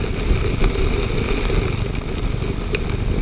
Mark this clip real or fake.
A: real